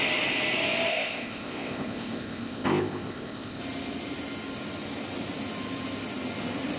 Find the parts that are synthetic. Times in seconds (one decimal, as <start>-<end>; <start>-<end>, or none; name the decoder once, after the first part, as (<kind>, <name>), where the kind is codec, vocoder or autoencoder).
0.9-3.6 (codec, ZipCodec)

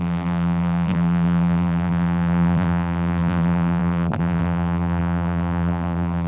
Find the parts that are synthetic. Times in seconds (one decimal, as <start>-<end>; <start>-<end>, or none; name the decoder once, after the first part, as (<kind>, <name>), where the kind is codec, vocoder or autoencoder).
0.0-6.3 (vocoder, BigVGAN v2)

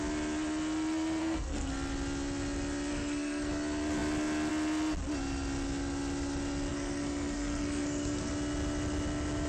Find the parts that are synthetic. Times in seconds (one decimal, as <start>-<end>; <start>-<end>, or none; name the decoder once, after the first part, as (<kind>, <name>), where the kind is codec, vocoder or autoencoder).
1.2-1.7 (codec, SNAC); 2.9-3.5; 6.7-8.3

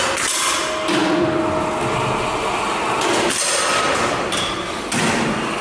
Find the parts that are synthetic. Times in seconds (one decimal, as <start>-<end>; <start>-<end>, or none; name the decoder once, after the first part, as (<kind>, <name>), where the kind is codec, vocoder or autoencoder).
none

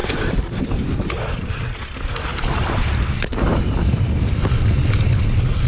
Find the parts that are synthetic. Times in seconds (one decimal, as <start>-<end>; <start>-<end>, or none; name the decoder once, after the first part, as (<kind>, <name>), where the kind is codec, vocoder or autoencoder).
none

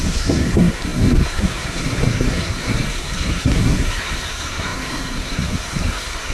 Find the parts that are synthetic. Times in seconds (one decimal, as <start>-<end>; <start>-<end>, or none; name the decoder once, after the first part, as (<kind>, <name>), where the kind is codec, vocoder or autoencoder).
0.0-6.3 (codec, SNAC)

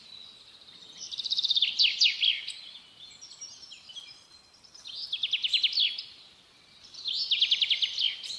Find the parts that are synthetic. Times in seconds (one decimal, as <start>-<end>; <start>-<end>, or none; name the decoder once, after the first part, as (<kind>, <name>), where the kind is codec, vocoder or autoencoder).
none